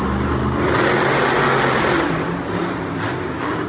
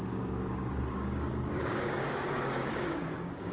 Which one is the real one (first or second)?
first